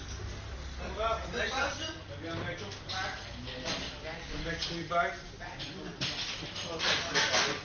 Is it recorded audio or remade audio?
recorded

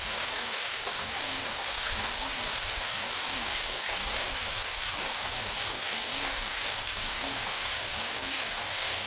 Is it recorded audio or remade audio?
remade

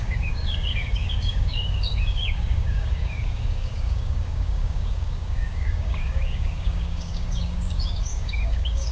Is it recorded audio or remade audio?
remade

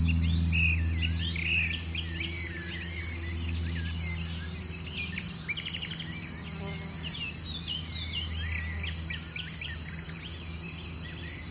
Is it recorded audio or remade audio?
recorded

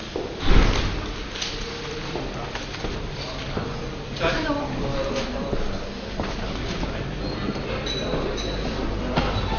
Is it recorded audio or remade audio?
recorded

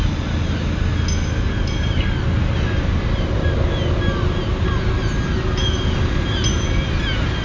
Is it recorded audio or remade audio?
recorded